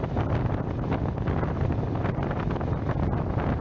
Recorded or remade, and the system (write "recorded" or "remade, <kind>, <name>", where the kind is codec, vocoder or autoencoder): recorded